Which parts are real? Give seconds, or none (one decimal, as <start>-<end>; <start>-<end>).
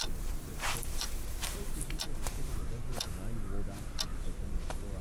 2.7-4.1